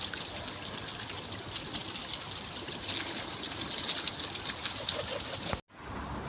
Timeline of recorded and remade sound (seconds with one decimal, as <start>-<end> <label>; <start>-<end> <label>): 0.0-6.3 recorded